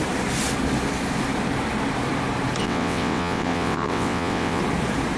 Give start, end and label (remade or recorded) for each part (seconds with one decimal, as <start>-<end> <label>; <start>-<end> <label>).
0.0-2.6 recorded; 2.6-4.6 remade; 4.6-5.2 recorded